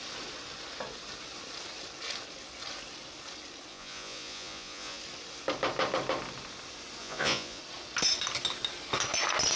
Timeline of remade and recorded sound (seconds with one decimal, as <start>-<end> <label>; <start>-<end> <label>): 0.0-3.7 recorded; 3.7-5.0 remade; 5.0-7.0 recorded; 7.0-7.6 remade; 7.6-9.6 recorded